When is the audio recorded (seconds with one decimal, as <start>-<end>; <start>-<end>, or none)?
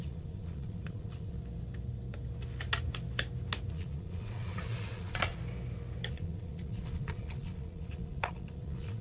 1.4-3.7; 5.3-6.1